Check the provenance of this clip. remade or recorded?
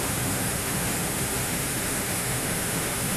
remade